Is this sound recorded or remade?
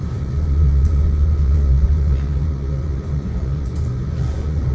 remade